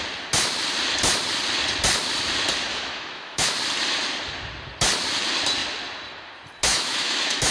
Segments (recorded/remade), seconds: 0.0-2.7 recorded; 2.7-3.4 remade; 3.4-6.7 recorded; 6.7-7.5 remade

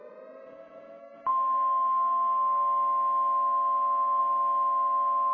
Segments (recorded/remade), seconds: 0.0-5.3 recorded

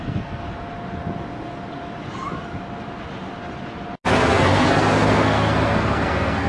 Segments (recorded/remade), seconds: 0.0-0.4 remade; 0.4-4.2 recorded; 4.2-6.5 remade

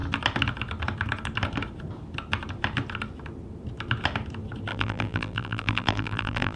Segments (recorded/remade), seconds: 0.0-4.7 recorded; 4.7-6.6 remade